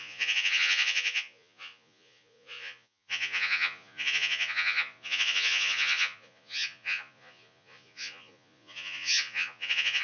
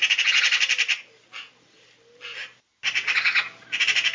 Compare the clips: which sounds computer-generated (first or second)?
first